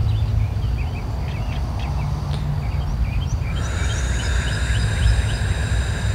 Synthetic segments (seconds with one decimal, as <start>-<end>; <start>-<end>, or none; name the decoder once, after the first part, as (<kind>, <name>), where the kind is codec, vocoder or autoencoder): none